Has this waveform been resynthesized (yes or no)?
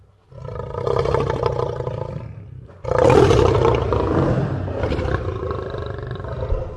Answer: no